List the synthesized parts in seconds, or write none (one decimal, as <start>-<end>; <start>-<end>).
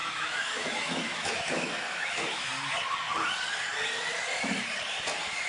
0.0-2.5